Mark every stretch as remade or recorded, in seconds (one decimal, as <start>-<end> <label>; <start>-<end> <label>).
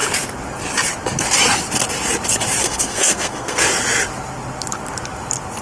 0.0-2.6 recorded; 2.6-3.6 remade; 3.6-5.6 recorded